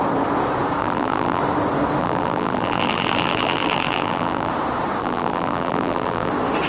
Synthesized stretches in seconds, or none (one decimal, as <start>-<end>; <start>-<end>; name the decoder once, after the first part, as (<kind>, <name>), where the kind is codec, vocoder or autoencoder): 0.8-1.4 (vocoder, BigVGAN v2); 2.0-4.5; 5.0-6.3